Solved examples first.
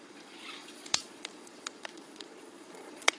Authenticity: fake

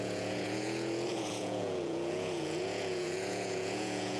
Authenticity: fake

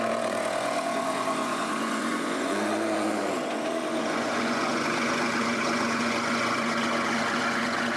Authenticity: fake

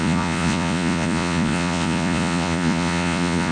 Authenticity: fake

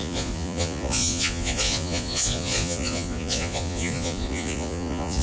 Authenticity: fake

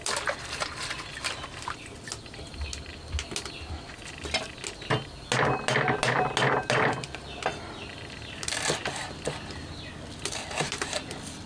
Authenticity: real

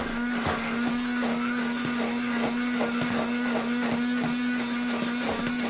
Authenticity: real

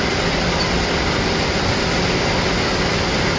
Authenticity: real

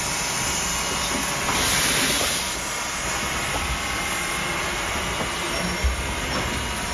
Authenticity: real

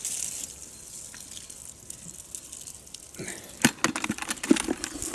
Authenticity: real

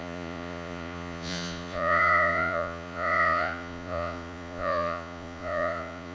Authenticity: fake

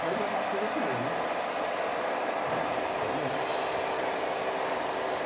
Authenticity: real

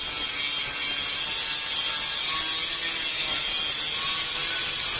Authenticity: real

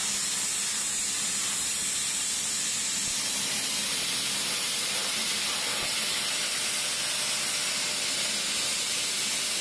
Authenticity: real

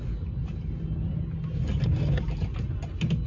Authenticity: real